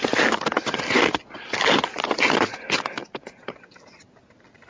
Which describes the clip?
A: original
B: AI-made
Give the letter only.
A